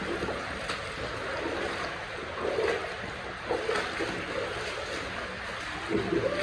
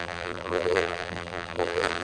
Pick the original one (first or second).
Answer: first